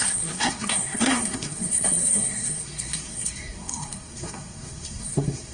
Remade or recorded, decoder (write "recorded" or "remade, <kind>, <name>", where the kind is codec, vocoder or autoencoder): remade, codec, SNAC